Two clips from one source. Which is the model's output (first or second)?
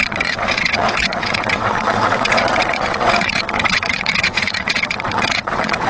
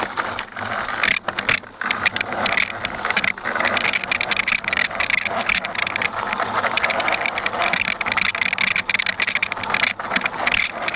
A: first